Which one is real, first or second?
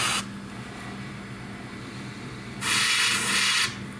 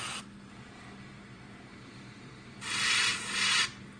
first